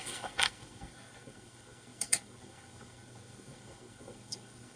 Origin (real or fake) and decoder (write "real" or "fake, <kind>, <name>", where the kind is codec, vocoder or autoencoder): fake, codec, SNAC